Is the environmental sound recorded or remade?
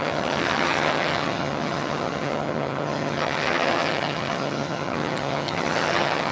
remade